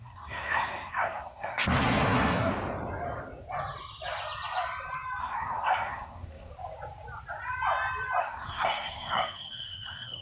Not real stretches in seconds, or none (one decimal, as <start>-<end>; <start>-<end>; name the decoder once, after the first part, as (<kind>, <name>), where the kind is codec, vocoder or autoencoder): 0.0-2.5 (codec, SNAC); 5.2-6.5; 8.2-10.2